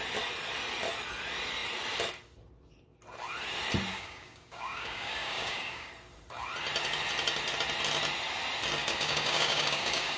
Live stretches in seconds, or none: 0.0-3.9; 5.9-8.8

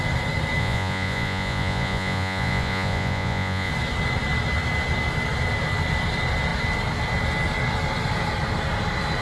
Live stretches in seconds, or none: 0.0-0.6; 3.7-9.2

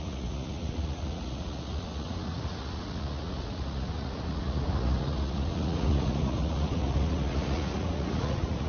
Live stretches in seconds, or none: none

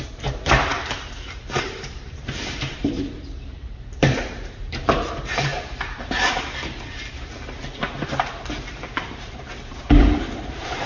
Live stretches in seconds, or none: 5.5-9.1

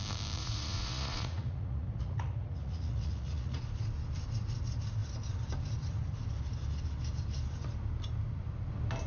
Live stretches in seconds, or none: 0.0-0.4; 3.6-9.1